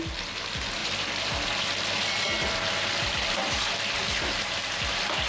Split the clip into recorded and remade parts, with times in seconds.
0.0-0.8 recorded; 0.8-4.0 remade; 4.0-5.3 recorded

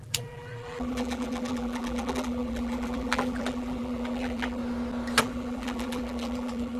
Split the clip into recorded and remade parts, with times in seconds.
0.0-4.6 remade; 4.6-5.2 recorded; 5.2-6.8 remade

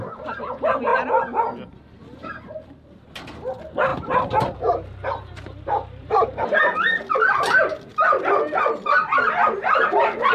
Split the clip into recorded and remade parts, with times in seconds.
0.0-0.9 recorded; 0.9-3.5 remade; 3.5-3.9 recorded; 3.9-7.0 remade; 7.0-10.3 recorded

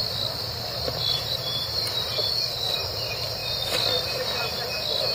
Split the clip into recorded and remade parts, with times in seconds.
0.0-1.2 recorded; 1.2-3.4 remade; 3.4-5.1 recorded

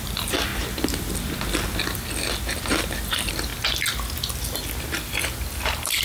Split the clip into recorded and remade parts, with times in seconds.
0.0-0.5 remade; 0.5-2.8 recorded; 2.8-3.5 remade; 3.5-5.6 recorded; 5.6-6.0 remade

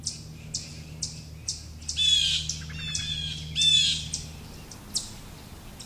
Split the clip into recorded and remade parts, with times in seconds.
0.0-5.9 recorded